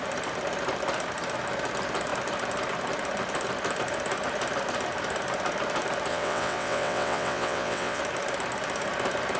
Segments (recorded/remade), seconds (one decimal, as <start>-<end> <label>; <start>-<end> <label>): 0.0-6.1 recorded; 6.1-8.0 remade; 8.0-9.4 recorded